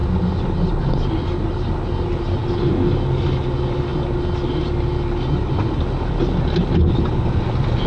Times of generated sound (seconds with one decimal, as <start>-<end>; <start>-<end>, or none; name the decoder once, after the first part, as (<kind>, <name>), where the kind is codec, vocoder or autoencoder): none

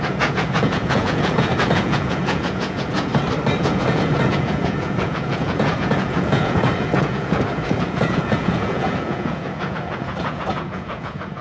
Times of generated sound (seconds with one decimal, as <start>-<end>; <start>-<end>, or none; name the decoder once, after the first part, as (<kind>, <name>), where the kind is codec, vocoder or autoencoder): 0.0-3.1 (vocoder, Vocos); 3.6-11.4

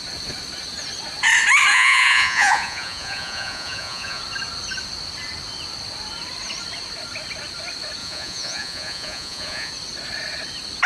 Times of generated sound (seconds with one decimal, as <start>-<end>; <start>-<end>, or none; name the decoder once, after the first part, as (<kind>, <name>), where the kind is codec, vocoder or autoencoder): 1.7-4.2 (vocoder, Vocos); 8.0-9.7

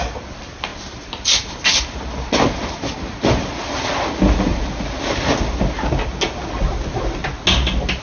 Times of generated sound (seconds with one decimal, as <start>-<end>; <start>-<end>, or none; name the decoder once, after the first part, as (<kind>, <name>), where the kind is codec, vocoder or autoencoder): none